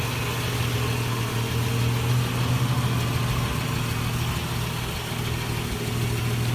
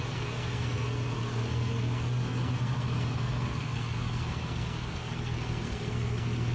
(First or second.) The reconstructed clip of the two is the second